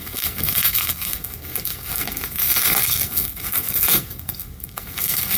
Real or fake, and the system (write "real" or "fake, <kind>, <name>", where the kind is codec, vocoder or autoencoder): fake, codec, SNAC